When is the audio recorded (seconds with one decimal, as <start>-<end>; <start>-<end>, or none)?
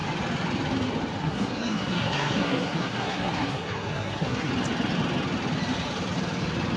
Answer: 0.0-1.2; 4.5-6.8